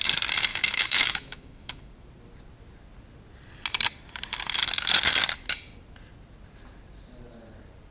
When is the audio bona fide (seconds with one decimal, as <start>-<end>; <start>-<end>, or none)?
0.0-0.5; 1.9-7.9